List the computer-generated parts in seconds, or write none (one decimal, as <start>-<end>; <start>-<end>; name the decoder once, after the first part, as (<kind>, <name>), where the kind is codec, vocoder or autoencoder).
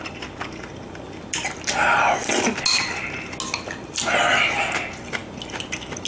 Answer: none